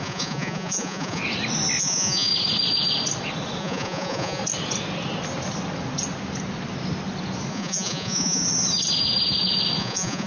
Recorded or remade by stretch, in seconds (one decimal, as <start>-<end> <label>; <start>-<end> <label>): 0.0-1.2 remade; 1.2-1.8 recorded; 1.8-2.3 remade; 2.3-3.6 recorded; 3.6-4.4 remade; 4.4-7.5 recorded; 7.5-8.4 remade; 8.4-9.8 recorded; 9.8-10.3 remade